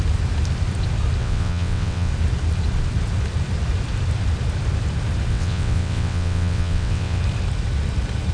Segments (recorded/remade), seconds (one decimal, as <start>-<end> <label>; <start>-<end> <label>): 0.0-1.2 recorded; 1.2-2.1 remade; 2.1-5.3 recorded; 5.3-7.2 remade; 7.2-8.3 recorded